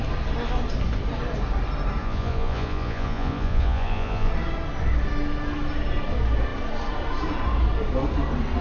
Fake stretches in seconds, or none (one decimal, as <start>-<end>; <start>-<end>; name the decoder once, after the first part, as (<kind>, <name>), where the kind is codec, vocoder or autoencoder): 2.0-4.3 (vocoder, Vocos)